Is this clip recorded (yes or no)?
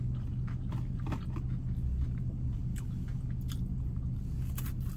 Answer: yes